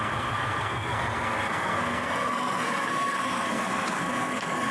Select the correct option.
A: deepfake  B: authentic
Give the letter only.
A